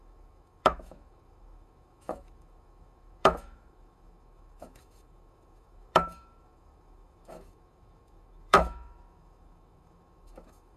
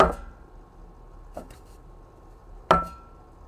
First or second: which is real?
second